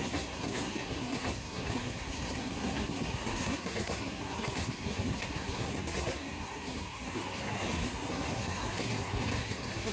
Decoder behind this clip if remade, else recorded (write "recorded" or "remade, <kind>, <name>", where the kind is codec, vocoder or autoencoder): remade, codec, SNAC